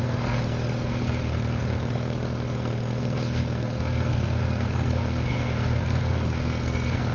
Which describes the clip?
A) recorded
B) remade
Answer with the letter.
B